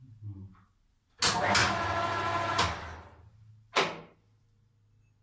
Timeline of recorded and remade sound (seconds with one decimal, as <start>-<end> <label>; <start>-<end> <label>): 0.0-5.2 recorded